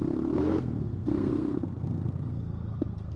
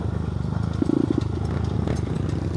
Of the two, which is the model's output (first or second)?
first